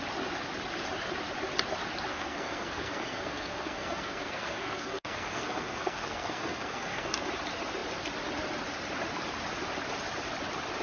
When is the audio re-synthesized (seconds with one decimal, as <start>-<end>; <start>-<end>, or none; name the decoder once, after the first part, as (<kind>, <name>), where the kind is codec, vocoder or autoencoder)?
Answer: 2.1-7.3 (codec, SNAC)